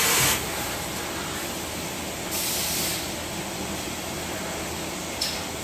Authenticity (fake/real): real